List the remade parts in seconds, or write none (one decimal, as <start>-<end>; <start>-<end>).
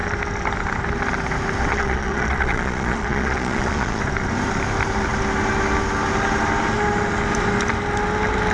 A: 1.7-4.0